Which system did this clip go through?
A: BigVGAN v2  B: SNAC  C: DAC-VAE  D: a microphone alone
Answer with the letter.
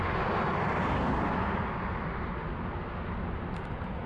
D